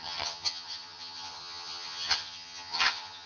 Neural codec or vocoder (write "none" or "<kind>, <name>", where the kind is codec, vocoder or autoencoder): vocoder, HiFi-GAN